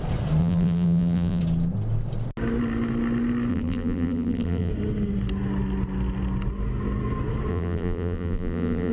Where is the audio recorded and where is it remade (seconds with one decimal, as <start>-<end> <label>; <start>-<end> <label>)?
0.0-0.4 recorded; 0.4-1.4 remade; 1.4-3.5 recorded; 3.5-4.7 remade; 4.7-7.5 recorded; 7.5-8.9 remade